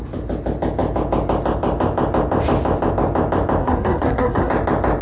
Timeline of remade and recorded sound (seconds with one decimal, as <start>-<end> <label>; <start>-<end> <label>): 0.0-3.6 recorded; 3.6-4.5 remade; 4.5-5.0 recorded